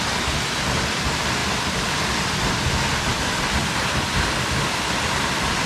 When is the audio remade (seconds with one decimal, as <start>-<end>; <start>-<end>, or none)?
none

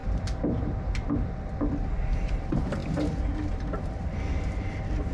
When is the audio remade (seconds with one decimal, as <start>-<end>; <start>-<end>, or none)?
2.2-5.1